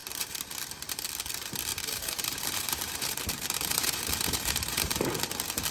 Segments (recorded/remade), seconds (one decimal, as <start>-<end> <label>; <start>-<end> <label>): 0.0-0.6 remade; 0.6-1.7 recorded; 1.7-5.0 remade; 5.0-5.7 recorded